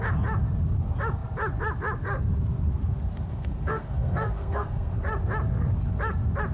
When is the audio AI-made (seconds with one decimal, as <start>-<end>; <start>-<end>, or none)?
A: 3.3-4.9